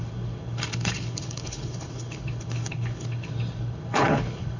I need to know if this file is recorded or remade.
remade